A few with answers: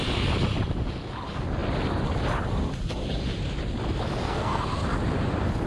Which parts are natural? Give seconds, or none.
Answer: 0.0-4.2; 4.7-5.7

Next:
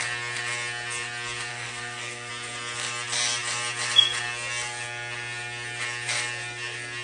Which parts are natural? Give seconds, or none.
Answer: 0.0-1.5; 2.3-7.0

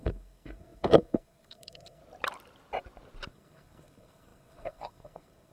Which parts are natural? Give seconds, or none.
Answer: 2.0-3.3

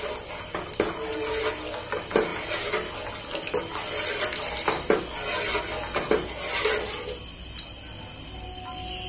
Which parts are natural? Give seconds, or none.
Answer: 0.0-9.1

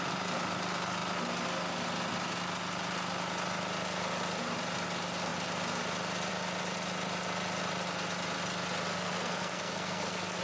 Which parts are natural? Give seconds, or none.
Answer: 0.0-8.9

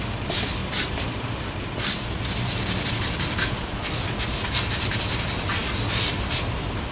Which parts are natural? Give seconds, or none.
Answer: 0.0-6.9